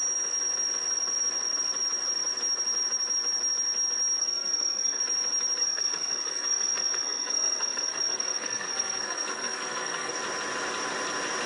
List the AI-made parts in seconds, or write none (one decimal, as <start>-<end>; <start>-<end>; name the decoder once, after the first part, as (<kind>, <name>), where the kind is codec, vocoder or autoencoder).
4.2-5.0 (codec, SNAC); 5.6-10.1